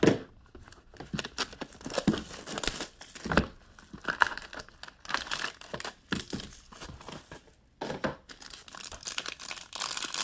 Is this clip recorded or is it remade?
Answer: recorded